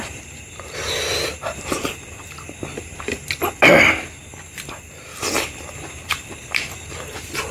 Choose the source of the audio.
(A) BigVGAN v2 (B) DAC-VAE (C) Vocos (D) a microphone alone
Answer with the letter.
D